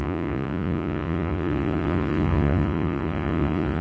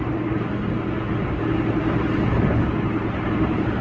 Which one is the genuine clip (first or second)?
second